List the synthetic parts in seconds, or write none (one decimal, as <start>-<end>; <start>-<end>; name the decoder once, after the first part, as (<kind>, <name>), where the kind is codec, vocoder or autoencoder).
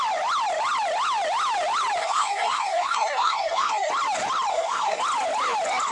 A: 2.0-3.9 (codec, SNAC); 4.5-5.0